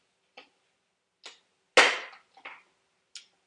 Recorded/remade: recorded